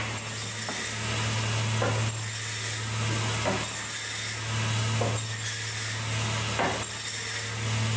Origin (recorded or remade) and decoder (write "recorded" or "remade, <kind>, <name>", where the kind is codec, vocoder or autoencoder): recorded